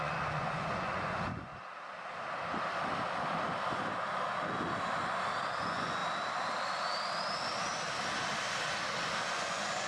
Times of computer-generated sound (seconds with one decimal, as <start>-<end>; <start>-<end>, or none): 0.0-1.5; 5.6-6.0; 9.2-9.9